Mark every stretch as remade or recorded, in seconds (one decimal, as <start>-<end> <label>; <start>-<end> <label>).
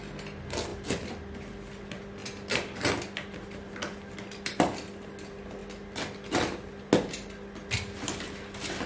0.0-8.9 recorded